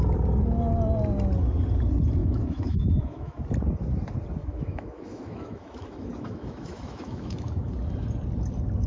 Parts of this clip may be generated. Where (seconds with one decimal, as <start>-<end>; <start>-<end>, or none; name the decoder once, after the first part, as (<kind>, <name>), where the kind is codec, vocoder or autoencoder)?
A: 2.2-3.4 (autoencoder, DAC-VAE); 4.4-7.7

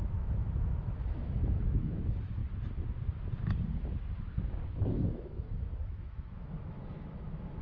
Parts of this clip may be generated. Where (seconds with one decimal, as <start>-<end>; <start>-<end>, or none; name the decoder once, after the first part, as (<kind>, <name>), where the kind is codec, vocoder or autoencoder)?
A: 0.0-2.4 (autoencoder, DAC-VAE); 4.7-7.6